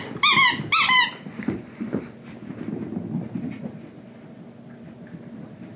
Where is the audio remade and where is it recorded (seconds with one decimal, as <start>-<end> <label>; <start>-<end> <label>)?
0.0-1.3 recorded; 1.3-2.0 remade; 2.0-5.8 recorded